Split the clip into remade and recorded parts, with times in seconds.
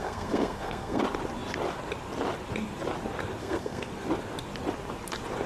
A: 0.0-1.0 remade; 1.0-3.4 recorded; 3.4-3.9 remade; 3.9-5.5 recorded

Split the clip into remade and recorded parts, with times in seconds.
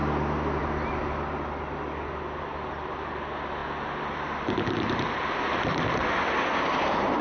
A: 0.0-7.2 recorded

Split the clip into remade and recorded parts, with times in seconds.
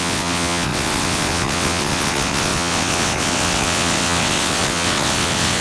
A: 0.0-5.6 remade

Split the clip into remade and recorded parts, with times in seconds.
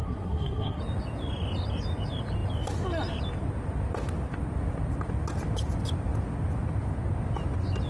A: 0.0-0.8 remade; 0.8-7.9 recorded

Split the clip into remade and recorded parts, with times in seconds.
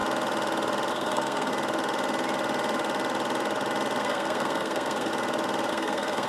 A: 0.0-0.9 recorded; 0.9-1.5 remade; 1.5-4.0 recorded; 4.0-5.1 remade; 5.1-5.7 recorded; 5.7-6.3 remade